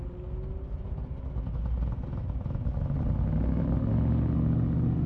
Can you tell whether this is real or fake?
real